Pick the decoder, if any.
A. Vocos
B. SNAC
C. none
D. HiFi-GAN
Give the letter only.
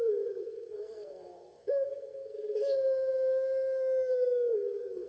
B